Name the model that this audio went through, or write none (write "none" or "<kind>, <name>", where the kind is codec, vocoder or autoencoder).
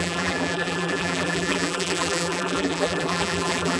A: vocoder, BigVGAN v2